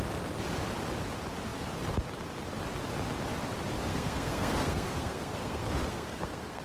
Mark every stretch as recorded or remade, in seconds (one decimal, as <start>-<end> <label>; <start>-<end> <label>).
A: 0.0-3.9 recorded; 3.9-6.6 remade